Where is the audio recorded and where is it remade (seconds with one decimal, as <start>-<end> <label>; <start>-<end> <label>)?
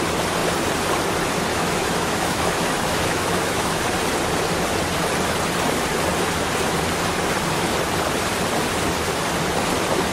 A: 0.0-1.5 recorded; 1.5-3.8 remade; 3.8-10.1 recorded